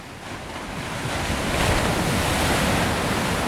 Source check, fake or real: real